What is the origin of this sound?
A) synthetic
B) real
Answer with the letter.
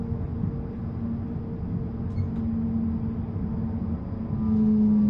B